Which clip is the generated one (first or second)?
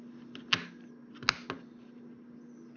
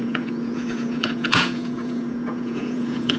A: second